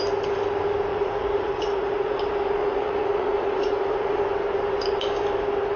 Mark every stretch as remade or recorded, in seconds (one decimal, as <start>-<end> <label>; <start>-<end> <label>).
0.0-0.9 recorded; 0.9-2.2 remade; 2.2-2.6 recorded; 2.6-4.2 remade; 4.2-5.8 recorded